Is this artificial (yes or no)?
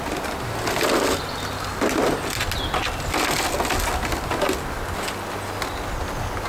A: no